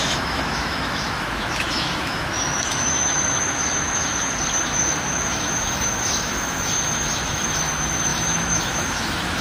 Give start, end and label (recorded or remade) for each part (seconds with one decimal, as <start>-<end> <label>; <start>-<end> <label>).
0.0-4.1 remade; 4.1-4.6 recorded; 4.6-9.4 remade